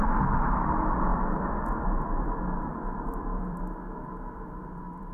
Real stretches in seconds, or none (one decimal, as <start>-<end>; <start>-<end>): none